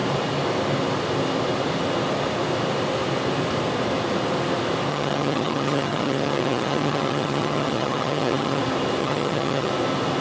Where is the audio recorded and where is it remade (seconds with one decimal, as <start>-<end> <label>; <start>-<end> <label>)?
0.0-4.9 recorded; 4.9-8.6 remade; 8.6-9.0 recorded; 9.0-9.7 remade; 9.7-10.2 recorded